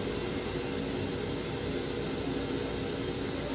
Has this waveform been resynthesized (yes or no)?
no